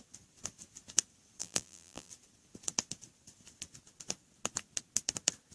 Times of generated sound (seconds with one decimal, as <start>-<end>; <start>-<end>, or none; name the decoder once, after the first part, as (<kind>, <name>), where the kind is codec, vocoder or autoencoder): 1.4-2.1 (vocoder, BigVGAN v2)